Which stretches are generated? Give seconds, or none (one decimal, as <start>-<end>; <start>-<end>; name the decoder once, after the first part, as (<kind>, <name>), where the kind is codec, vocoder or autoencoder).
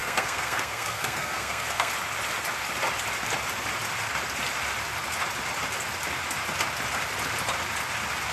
0.0-1.9 (codec, SNAC)